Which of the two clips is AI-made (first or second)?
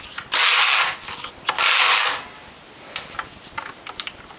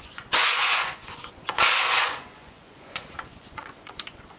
second